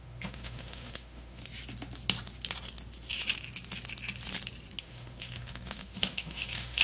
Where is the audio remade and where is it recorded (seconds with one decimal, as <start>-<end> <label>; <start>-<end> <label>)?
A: 0.0-1.4 remade; 1.4-4.8 recorded; 4.8-6.8 remade